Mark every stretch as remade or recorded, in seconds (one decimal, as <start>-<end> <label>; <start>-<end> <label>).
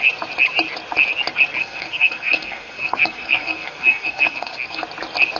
0.0-1.6 recorded; 1.6-4.8 remade; 4.8-5.4 recorded